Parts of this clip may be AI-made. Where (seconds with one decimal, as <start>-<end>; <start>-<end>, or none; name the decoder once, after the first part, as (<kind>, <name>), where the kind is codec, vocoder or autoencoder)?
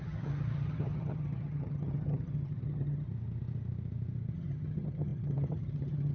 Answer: 0.0-3.1 (vocoder, HiFi-GAN); 4.3-6.1